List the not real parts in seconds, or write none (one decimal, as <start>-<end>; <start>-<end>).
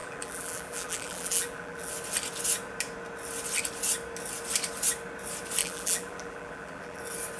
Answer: 0.0-1.9; 5.6-7.0